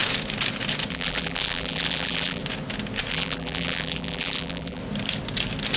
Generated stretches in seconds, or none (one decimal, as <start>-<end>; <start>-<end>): 0.9-2.4; 3.1-4.8